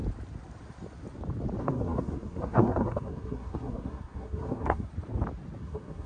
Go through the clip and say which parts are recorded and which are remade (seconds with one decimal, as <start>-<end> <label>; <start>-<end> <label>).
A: 0.0-1.6 recorded; 1.6-4.9 remade; 4.9-5.6 recorded; 5.6-6.1 remade